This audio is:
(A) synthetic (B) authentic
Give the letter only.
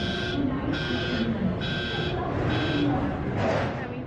B